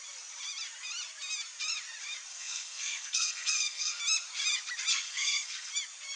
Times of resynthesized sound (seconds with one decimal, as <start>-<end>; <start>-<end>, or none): 2.3-4.0; 4.9-5.7